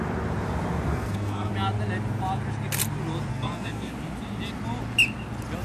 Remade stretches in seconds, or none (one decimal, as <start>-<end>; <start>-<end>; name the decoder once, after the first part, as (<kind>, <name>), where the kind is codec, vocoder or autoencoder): 0.9-1.5 (codec, SNAC); 3.3-3.9

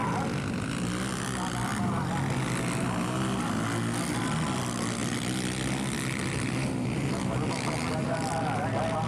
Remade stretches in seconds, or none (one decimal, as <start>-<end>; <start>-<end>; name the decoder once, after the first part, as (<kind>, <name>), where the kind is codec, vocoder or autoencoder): none

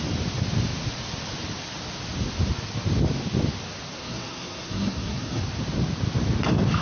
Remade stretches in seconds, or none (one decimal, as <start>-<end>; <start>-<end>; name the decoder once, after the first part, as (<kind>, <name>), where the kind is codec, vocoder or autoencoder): 4.0-5.4 (codec, SNAC)